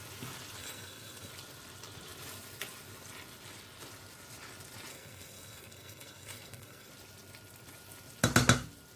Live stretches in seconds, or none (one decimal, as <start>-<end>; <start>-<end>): 0.0-0.6; 1.3-4.9; 6.9-9.0